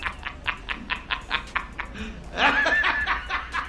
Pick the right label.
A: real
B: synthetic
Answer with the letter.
A